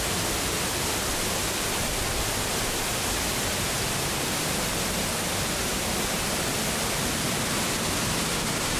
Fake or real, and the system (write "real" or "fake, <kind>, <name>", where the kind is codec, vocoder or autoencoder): real